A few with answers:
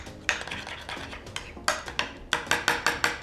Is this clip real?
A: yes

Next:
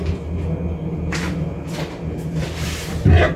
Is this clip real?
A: yes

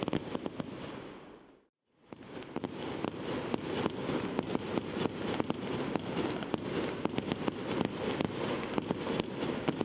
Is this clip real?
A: yes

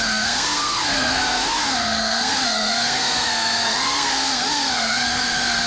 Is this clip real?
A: no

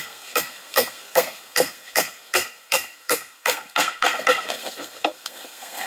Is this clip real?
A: no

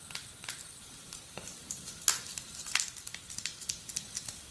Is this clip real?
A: yes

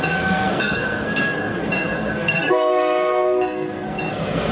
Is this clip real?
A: no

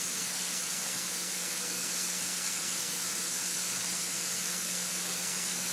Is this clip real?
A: no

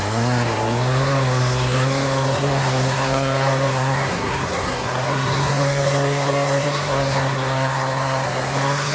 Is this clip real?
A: no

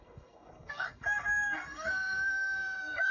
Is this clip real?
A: no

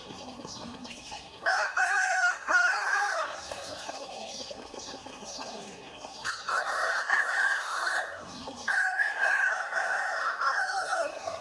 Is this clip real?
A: no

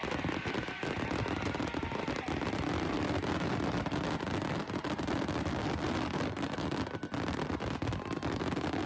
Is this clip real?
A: yes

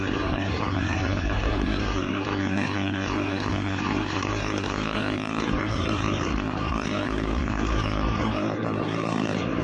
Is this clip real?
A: no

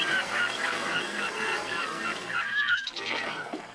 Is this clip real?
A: no